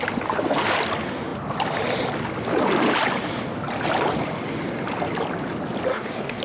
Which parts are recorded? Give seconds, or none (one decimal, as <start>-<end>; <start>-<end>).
0.0-5.9